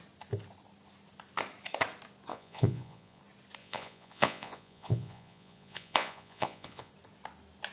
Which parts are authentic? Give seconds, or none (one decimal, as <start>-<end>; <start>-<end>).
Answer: 0.0-2.3; 3.2-3.6; 6.9-7.7